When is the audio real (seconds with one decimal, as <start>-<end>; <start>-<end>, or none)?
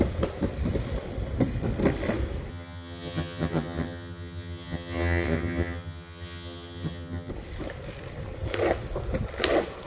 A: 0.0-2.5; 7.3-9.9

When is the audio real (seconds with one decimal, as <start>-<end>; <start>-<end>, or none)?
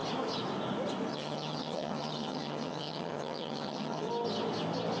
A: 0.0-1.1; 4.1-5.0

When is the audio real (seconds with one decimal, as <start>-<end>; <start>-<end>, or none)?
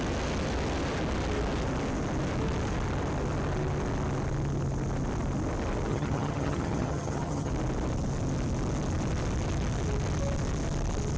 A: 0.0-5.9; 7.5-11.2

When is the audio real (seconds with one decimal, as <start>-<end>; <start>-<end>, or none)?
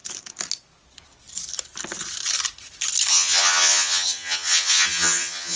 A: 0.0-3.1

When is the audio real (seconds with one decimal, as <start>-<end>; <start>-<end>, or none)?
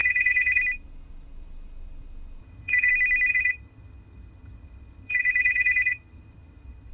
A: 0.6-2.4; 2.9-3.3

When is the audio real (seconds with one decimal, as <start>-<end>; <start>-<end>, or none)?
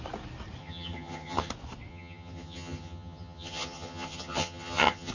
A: 0.0-0.6; 1.5-1.9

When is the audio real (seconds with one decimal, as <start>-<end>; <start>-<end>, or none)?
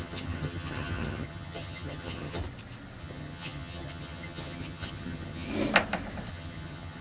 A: 2.4-3.0; 5.5-6.3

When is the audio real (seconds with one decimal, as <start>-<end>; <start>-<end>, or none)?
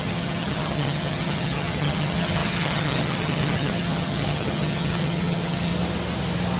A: 5.7-6.6